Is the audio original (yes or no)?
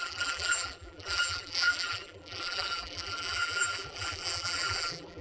no